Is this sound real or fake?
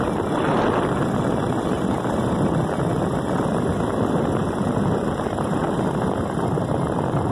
real